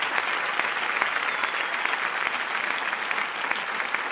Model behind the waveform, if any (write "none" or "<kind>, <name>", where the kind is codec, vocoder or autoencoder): none